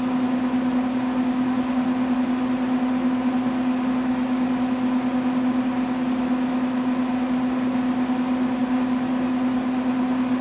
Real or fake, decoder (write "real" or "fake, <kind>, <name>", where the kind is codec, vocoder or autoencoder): real